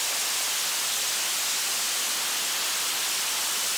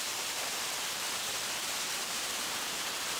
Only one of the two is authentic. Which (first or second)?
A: first